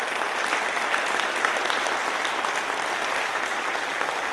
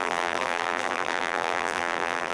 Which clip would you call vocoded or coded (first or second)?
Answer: second